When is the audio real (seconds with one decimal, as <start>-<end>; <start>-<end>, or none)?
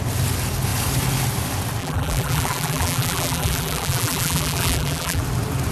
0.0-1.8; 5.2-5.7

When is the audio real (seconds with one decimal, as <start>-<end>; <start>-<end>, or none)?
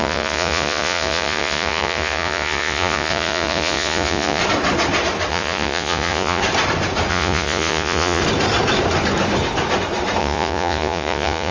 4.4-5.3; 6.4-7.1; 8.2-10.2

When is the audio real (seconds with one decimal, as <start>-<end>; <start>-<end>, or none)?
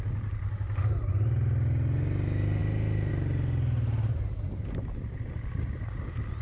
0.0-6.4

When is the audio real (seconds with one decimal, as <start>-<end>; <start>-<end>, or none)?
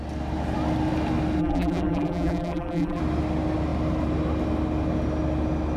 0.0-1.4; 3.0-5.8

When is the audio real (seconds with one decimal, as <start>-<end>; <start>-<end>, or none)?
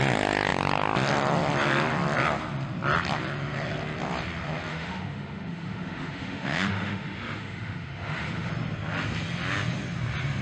0.0-4.7; 8.5-10.4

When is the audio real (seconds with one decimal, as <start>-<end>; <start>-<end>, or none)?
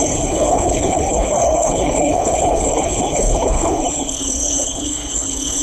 none